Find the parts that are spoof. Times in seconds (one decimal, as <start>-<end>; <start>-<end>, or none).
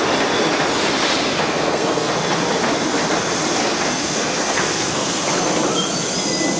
1.4-2.1; 3.6-5.5